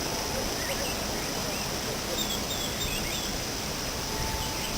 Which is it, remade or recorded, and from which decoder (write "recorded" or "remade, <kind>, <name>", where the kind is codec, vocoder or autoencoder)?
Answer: recorded